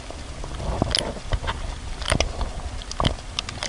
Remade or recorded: recorded